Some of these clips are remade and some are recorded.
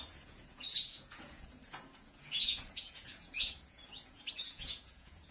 remade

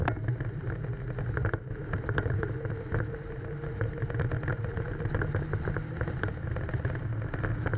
recorded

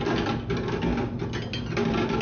recorded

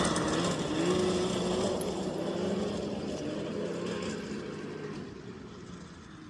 recorded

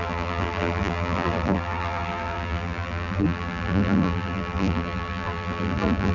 remade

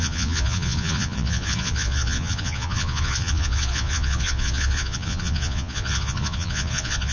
remade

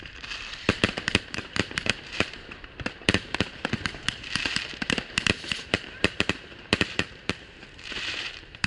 remade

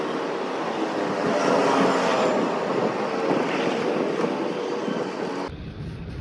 recorded